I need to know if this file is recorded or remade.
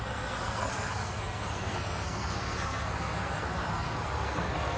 remade